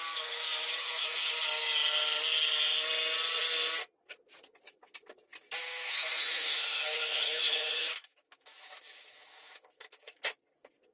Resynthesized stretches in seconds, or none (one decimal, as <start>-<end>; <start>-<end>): 0.8-1.3; 5.6-10.2